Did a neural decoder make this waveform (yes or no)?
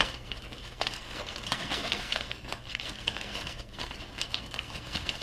yes